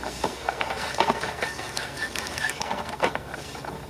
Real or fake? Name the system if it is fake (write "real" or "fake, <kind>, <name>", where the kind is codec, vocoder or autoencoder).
fake, codec, SNAC